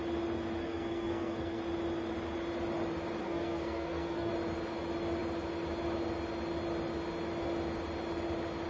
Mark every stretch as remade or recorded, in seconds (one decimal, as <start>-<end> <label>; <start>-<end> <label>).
0.0-0.6 recorded; 0.6-1.6 remade; 1.6-3.2 recorded; 3.2-4.3 remade; 4.3-8.7 recorded